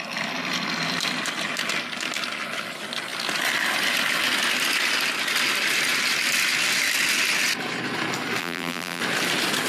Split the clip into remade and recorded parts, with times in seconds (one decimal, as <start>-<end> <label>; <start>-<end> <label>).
0.0-8.4 recorded; 8.4-9.0 remade; 9.0-9.7 recorded